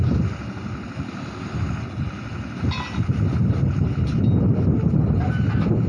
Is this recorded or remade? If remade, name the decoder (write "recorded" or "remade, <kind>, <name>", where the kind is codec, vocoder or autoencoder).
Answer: recorded